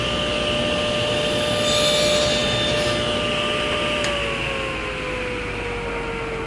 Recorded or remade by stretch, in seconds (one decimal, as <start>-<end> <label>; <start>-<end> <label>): 0.0-6.5 recorded